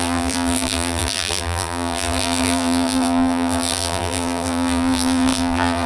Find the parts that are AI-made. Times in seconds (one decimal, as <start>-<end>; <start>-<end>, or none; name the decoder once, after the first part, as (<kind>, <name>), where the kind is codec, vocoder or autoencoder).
0.0-5.9 (vocoder, BigVGAN v2)